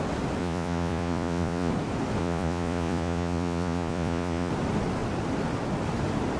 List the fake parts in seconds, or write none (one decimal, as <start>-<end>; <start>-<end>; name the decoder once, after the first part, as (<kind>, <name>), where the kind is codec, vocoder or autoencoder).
0.4-1.7 (vocoder, Vocos); 2.2-4.5